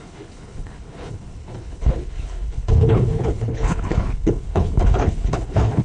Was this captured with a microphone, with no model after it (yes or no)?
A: no